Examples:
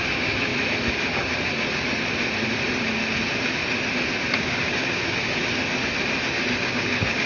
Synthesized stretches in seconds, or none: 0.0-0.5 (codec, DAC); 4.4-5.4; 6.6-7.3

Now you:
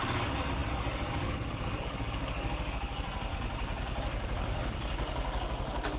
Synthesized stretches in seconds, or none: 0.0-3.3 (codec, DAC); 4.0-6.0

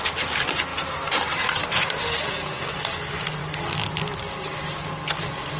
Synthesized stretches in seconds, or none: none

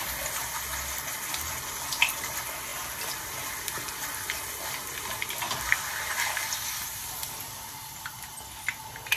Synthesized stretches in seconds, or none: none

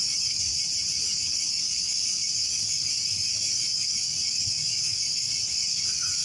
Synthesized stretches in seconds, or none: 0.0-0.5 (codec, DAC); 1.0-6.2

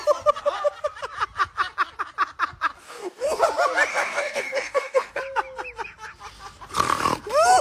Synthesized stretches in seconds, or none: 2.8-3.4 (codec, DAC); 3.9-5.2